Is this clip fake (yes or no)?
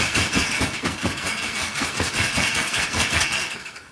yes